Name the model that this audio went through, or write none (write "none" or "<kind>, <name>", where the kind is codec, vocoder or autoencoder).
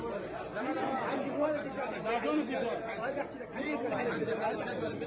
none